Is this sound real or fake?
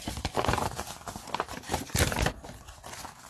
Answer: real